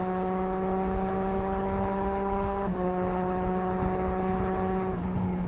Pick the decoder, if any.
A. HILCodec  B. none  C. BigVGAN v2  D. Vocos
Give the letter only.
A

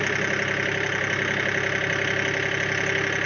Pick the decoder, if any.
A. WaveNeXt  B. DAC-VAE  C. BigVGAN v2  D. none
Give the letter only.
D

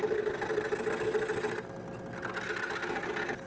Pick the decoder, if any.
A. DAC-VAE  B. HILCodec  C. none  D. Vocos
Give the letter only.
C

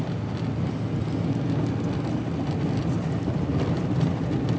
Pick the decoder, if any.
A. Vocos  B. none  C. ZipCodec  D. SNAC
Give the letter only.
B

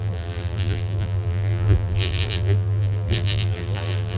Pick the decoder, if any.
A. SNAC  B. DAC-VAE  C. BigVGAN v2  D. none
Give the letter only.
C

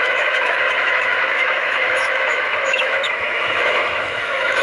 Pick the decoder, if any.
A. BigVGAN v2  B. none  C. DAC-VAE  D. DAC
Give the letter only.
C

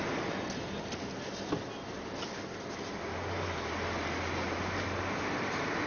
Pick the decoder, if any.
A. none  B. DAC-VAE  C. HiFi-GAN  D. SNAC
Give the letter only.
A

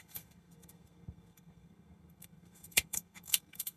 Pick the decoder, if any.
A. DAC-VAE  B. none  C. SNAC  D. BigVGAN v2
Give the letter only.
C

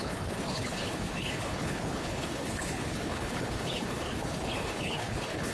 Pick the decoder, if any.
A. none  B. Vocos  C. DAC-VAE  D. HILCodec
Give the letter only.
D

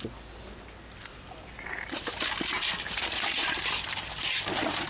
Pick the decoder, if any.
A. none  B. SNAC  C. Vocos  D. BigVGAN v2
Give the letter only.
A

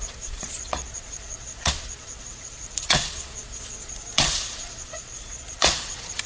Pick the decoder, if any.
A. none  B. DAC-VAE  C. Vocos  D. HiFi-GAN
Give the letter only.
C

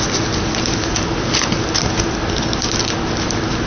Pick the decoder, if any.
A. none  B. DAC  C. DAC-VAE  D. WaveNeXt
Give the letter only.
A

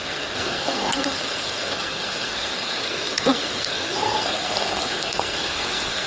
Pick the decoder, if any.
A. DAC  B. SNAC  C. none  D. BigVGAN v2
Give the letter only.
B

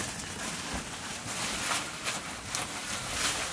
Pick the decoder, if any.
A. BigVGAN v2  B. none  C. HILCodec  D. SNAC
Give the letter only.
B